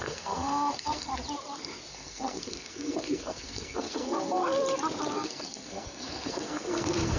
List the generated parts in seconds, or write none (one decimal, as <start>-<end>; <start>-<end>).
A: 0.0-1.1; 1.9-4.4; 5.1-7.2